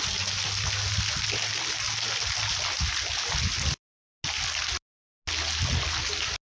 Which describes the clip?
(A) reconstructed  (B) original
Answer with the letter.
B